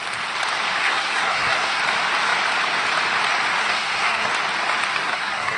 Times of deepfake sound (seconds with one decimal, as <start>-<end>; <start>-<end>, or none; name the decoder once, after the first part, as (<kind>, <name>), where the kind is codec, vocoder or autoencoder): 0.8-1.8 (codec, SNAC); 3.6-4.3; 4.9-5.6

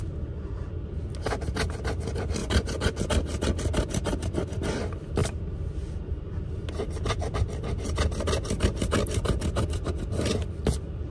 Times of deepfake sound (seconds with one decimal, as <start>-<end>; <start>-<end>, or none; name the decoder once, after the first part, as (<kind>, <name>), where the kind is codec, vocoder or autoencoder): 2.4-3.0 (vocoder, Vocos)

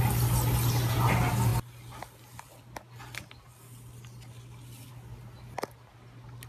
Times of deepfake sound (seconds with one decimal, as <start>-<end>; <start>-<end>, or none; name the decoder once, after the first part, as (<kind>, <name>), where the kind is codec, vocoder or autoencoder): none

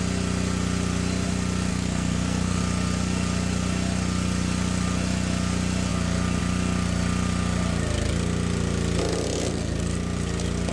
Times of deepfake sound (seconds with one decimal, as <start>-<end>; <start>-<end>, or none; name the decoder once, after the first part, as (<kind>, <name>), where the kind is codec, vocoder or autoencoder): 1.7-2.6 (codec, SNAC)

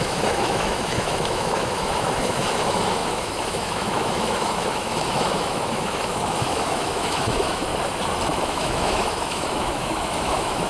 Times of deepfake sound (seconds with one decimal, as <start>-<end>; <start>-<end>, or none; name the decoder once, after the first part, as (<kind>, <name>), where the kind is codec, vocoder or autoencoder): 0.0-7.7 (autoencoder, DAC-VAE); 8.3-10.7

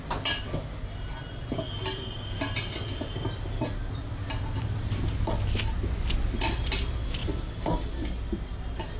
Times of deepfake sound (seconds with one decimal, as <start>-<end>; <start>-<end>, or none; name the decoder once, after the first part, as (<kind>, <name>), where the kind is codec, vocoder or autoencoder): none